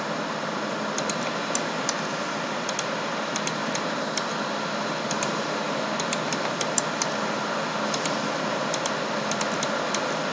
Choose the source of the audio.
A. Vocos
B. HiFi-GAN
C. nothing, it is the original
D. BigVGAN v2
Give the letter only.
C